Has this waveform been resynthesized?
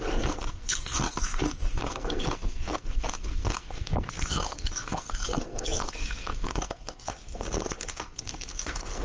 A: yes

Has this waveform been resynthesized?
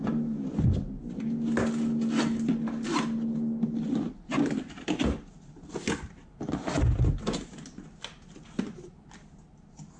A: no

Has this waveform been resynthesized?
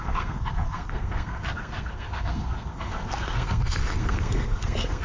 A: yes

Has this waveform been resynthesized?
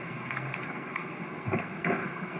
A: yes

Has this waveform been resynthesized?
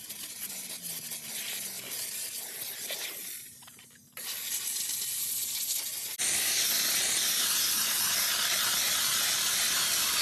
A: no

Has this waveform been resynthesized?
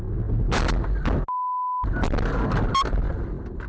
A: no